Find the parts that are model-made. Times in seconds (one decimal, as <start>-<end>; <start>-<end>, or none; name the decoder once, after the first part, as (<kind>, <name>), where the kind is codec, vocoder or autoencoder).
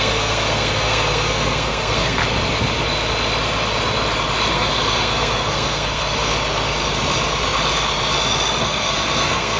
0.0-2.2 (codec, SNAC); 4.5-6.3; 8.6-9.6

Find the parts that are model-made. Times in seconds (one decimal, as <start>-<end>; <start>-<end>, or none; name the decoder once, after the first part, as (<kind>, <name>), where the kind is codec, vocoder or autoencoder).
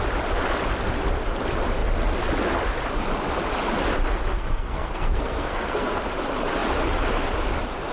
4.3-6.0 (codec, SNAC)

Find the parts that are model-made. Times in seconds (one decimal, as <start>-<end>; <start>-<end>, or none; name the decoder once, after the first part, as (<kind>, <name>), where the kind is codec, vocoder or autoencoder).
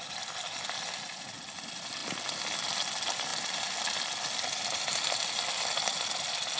none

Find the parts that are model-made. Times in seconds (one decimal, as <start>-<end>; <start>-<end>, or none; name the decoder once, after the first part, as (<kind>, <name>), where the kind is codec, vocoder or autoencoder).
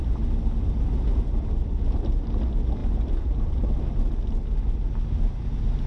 none